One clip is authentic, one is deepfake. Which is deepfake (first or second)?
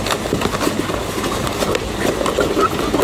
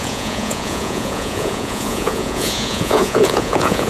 second